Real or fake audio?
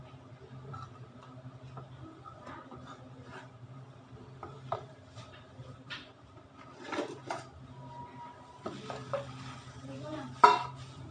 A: fake